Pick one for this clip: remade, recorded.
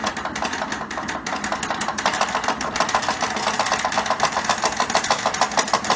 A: remade